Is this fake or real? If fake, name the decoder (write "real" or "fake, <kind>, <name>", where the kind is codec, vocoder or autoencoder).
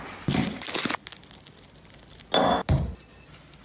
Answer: real